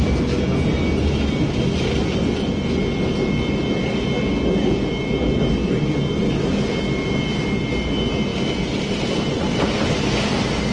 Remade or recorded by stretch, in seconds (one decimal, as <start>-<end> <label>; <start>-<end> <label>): 0.0-10.7 recorded